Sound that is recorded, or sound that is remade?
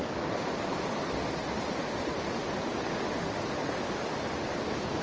recorded